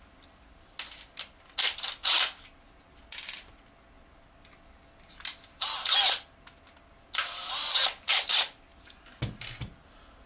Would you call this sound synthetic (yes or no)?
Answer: no